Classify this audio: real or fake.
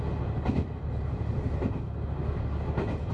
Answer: real